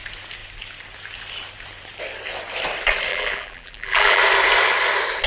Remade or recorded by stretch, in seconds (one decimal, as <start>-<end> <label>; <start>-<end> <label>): 0.0-3.1 recorded; 3.1-4.2 remade; 4.2-5.3 recorded